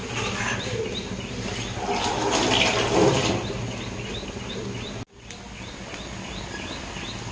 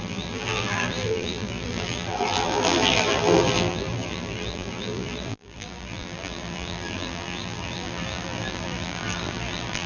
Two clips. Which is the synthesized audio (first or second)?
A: second